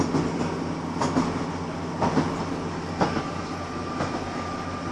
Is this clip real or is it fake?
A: real